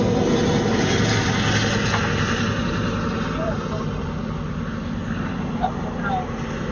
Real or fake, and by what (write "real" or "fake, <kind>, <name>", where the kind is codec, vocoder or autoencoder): real